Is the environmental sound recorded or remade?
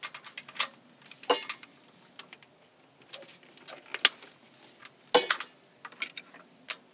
recorded